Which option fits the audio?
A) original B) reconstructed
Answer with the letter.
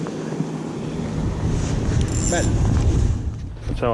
A